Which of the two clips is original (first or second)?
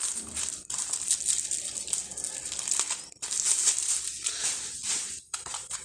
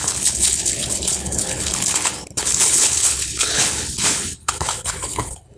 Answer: first